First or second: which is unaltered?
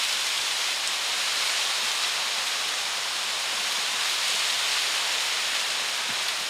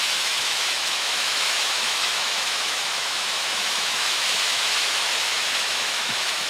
first